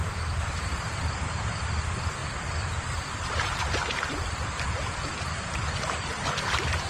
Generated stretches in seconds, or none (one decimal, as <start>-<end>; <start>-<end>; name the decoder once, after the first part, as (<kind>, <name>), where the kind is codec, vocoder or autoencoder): 0.0-2.2 (vocoder, BigVGAN v2); 2.8-6.9